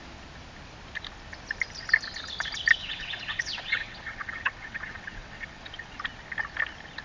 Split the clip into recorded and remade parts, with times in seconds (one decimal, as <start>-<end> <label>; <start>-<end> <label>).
0.0-2.8 recorded; 2.8-6.0 remade; 6.0-7.0 recorded